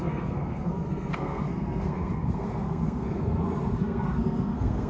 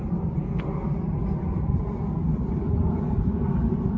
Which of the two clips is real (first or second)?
second